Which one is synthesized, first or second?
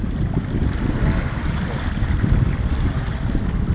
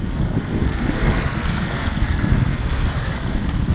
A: second